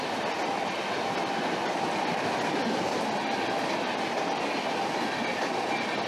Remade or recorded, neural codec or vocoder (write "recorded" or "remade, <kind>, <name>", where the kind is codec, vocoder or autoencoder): recorded